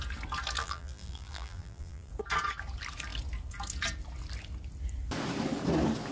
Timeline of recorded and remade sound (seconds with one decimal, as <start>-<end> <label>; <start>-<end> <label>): 0.0-0.6 recorded; 0.6-2.1 remade; 2.1-6.1 recorded